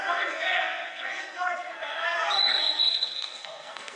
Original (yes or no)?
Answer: no